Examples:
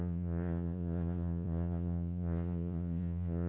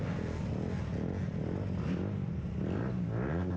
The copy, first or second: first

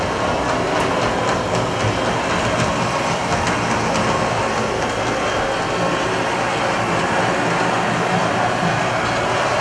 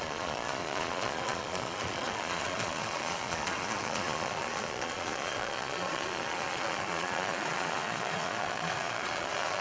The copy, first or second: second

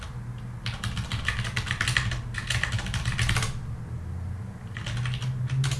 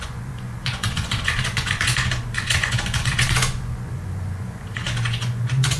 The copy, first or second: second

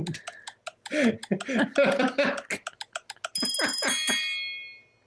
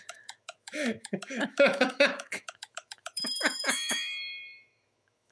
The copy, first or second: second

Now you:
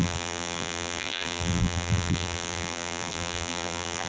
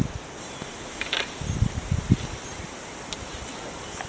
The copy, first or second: first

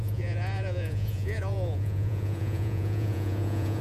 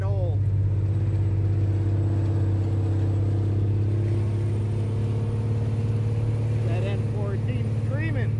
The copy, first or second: first